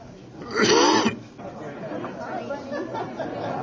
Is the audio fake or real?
real